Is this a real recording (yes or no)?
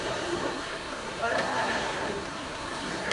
no